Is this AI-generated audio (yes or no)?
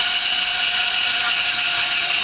yes